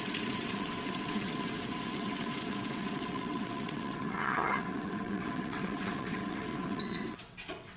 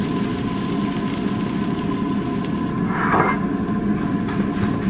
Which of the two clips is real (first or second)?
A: second